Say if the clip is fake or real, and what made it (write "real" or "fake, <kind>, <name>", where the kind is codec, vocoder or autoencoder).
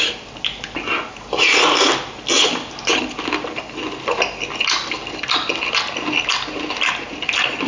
real